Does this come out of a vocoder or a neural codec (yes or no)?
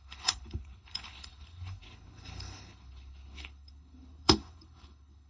yes